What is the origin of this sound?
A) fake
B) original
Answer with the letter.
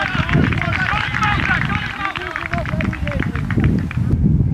B